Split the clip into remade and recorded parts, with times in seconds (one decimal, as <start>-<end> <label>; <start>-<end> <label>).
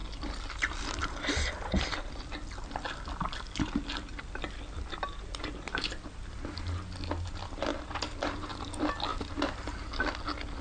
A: 0.0-10.6 recorded